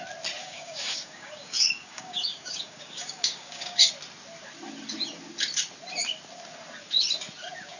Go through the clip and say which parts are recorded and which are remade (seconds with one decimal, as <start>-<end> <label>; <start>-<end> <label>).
0.0-0.4 recorded; 0.4-3.9 remade; 3.9-7.8 recorded